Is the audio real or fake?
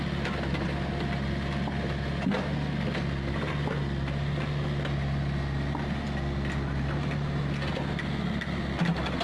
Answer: real